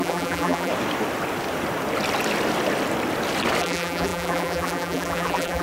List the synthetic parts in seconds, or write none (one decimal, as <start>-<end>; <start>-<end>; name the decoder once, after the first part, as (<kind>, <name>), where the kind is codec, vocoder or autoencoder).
0.0-0.7 (vocoder, BigVGAN v2); 3.6-5.6